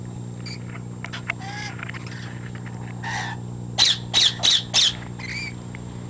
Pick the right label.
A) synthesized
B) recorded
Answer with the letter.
B